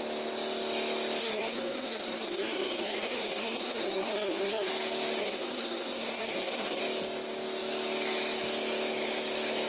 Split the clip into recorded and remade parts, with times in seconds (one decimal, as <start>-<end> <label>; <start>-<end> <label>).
0.0-1.2 recorded; 1.2-4.7 remade; 4.7-5.2 recorded; 5.2-6.8 remade; 6.8-9.7 recorded